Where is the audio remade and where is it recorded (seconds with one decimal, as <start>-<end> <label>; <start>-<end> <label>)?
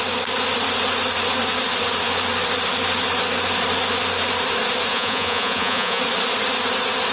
0.0-4.9 recorded; 4.9-6.0 remade; 6.0-7.1 recorded